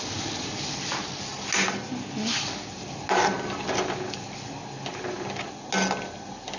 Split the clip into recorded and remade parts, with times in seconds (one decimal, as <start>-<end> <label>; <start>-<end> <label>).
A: 0.0-6.6 recorded